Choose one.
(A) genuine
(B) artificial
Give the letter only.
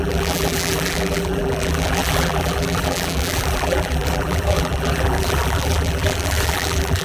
B